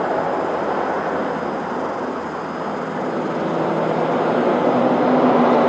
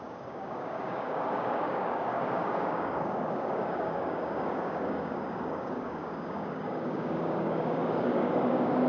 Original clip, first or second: first